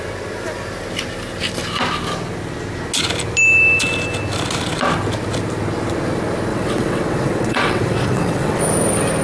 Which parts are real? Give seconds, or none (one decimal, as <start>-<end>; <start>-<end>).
0.0-6.5; 8.6-9.2